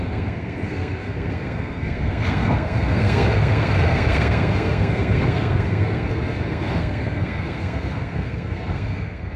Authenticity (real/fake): fake